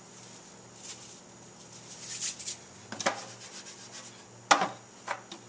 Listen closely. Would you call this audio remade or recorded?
recorded